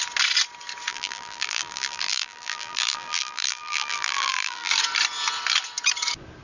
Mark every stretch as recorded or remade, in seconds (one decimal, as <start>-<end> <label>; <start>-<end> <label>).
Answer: 0.0-0.9 recorded; 0.9-4.7 remade; 4.7-6.4 recorded